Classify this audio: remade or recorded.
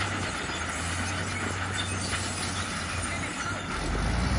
recorded